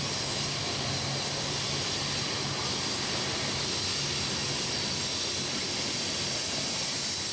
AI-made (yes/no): no